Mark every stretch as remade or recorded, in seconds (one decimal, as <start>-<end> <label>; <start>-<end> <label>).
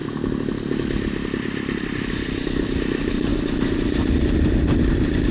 0.0-2.1 recorded; 2.1-3.3 remade; 3.3-4.8 recorded; 4.8-5.3 remade